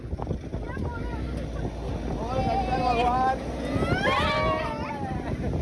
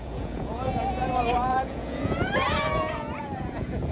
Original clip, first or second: first